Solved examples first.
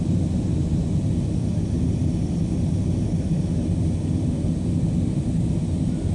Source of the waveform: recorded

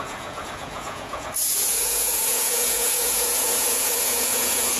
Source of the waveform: remade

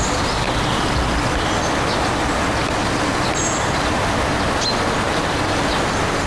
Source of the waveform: recorded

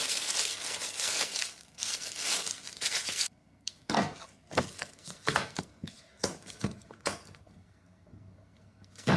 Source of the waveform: remade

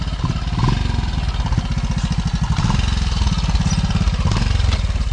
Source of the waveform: recorded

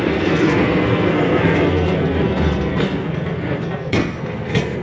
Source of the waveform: remade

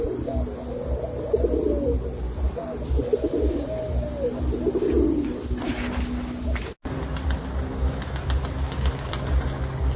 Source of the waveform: recorded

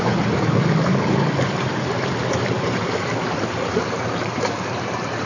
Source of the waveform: remade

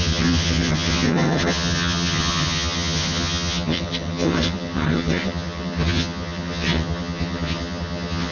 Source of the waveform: remade